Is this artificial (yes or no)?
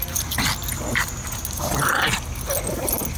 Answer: no